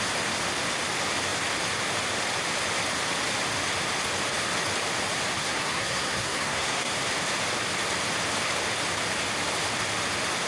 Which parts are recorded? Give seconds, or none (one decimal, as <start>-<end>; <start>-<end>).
0.0-5.4; 6.9-10.5